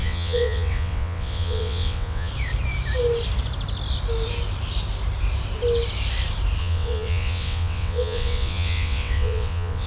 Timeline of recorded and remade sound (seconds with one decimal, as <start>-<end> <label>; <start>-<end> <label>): 0.0-2.3 remade; 2.3-6.6 recorded; 6.6-9.9 remade